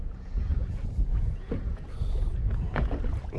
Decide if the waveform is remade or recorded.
remade